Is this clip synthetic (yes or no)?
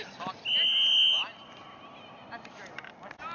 no